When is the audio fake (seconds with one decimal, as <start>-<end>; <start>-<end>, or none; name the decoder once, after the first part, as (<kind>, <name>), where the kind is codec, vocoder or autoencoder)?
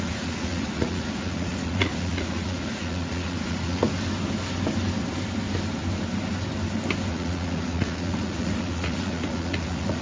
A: 0.0-3.8 (vocoder, Vocos); 7.1-10.0